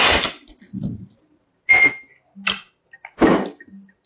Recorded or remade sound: recorded